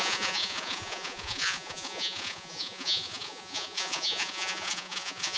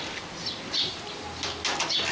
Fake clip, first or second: first